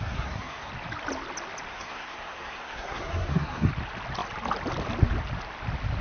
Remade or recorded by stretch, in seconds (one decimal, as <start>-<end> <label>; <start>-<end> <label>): 0.0-0.7 remade; 0.7-1.7 recorded; 1.7-3.7 remade; 3.7-6.0 recorded